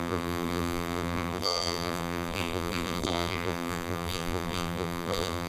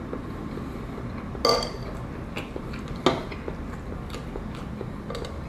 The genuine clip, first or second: second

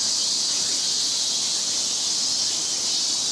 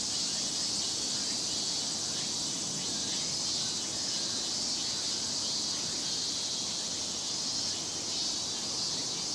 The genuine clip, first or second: second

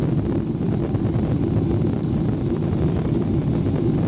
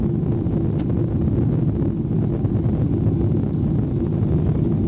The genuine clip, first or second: second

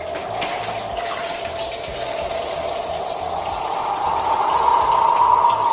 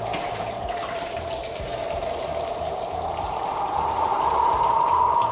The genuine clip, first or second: first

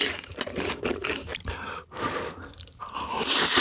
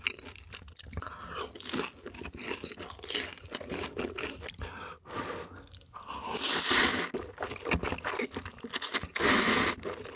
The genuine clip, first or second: second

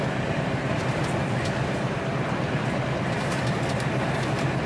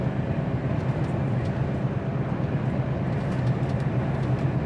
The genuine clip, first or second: second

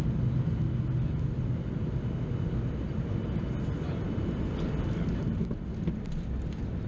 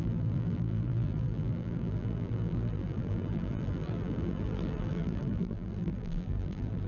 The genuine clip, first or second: first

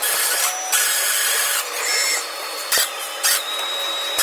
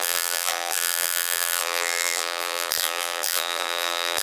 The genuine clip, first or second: first